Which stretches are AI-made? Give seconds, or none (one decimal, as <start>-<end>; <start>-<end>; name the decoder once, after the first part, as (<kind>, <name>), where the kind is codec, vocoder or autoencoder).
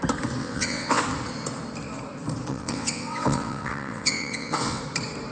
0.4-1.0 (vocoder, WaveNeXt); 2.5-4.8